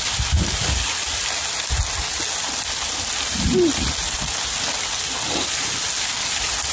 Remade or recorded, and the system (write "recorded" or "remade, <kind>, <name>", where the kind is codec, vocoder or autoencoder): recorded